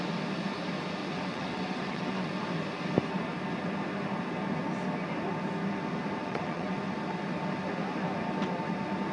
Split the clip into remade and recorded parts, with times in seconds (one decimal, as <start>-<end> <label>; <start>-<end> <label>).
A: 0.0-1.0 recorded; 1.0-2.3 remade; 2.3-6.2 recorded; 6.2-6.8 remade; 6.8-9.1 recorded